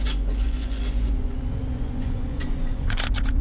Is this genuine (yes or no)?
no